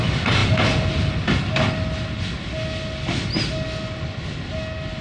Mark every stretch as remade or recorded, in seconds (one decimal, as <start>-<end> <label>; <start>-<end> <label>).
0.0-5.0 recorded